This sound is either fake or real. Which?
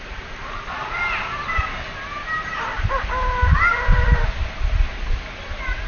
real